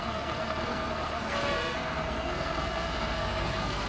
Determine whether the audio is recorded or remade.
remade